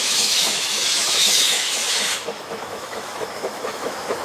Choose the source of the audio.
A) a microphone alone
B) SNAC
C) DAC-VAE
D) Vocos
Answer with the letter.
C